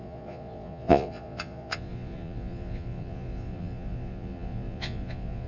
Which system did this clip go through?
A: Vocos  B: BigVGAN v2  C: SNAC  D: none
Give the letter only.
A